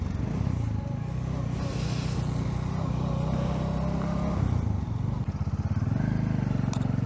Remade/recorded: recorded